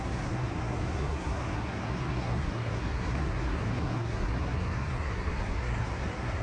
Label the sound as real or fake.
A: fake